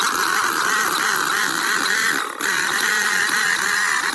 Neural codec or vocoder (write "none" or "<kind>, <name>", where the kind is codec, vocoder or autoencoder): none